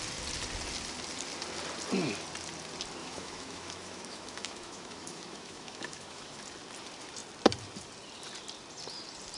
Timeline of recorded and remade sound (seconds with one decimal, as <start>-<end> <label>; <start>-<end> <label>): 0.0-3.0 recorded; 3.0-6.4 remade; 6.4-9.4 recorded